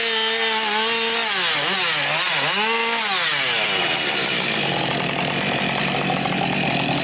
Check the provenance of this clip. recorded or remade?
recorded